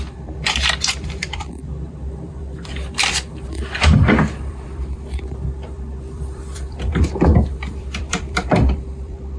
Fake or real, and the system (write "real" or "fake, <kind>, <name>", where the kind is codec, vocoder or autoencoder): fake, vocoder, BigVGAN v2